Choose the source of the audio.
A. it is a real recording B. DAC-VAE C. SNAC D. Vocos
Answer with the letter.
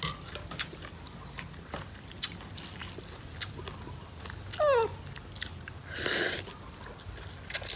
A